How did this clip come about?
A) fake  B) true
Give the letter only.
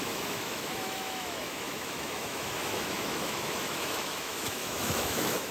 A